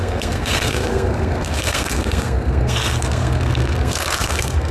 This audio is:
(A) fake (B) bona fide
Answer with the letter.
A